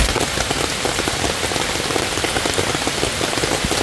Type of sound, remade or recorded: recorded